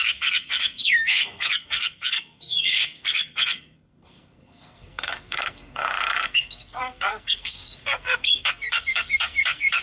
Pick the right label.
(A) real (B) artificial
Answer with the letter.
B